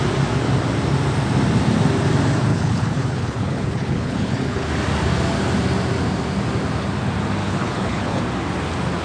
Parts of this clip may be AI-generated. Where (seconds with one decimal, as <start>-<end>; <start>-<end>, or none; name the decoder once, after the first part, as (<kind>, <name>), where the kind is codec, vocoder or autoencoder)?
2.5-4.7 (codec, HILCodec); 7.4-8.2